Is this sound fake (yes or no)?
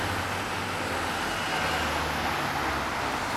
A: no